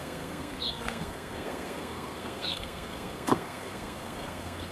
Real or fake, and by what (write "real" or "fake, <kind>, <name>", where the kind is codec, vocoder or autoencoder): fake, codec, SNAC